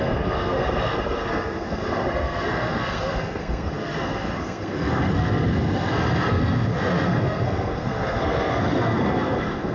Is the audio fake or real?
fake